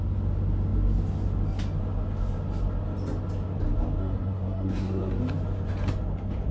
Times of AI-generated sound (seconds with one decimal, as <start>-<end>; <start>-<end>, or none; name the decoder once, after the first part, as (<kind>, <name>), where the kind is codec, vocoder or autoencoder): 4.0-5.2 (codec, SNAC)